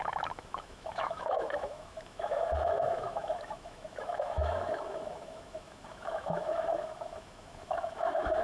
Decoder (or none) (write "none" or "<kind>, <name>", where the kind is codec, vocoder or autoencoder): autoencoder, DAC-VAE